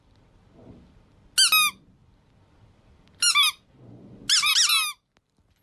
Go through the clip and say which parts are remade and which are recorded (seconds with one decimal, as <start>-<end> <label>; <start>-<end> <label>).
0.0-5.6 recorded